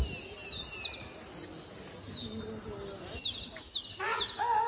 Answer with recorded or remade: recorded